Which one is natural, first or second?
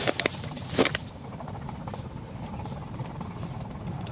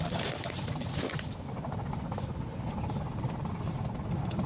second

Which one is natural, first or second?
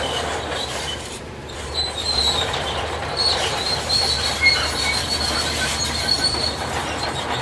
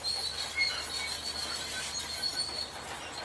second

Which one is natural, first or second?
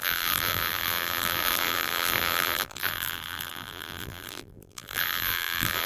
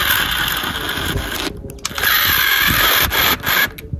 second